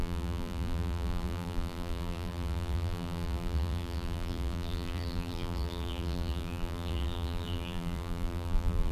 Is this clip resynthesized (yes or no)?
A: yes